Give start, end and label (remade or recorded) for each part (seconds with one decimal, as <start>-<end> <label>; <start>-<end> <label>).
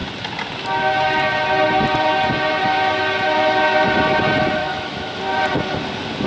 0.0-4.6 recorded; 4.6-5.2 remade; 5.2-6.3 recorded